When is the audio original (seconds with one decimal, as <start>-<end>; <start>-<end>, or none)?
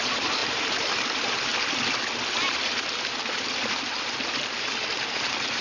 1.5-4.9